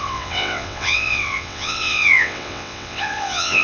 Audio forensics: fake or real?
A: fake